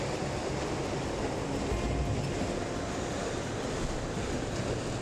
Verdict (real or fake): real